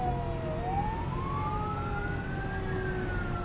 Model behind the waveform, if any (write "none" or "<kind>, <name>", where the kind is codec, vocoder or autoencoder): none